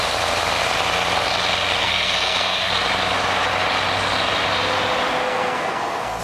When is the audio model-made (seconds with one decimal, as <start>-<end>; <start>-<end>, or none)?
1.8-2.7; 5.2-6.2